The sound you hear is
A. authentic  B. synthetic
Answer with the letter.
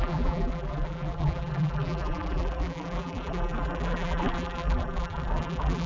B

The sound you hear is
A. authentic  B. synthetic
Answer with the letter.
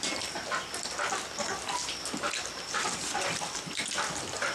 A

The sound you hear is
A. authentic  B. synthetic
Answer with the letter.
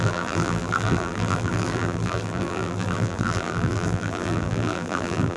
B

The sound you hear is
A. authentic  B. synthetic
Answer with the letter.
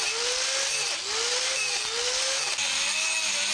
A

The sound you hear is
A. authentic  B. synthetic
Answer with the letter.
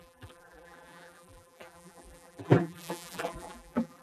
B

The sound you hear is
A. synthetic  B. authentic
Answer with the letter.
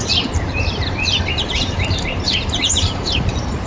A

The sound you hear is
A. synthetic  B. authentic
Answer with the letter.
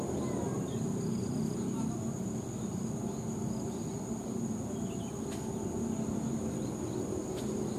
B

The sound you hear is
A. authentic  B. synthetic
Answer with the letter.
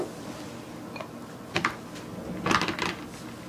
A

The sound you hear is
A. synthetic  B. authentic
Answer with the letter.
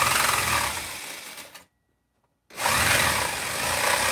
B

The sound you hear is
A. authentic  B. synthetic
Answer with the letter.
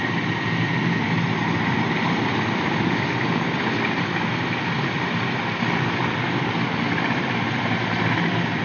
A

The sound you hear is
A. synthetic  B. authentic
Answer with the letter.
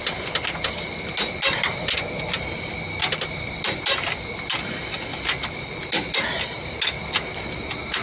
B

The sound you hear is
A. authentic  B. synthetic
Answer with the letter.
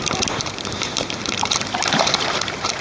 B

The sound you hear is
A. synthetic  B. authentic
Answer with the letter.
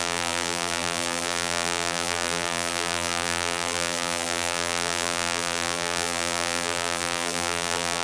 A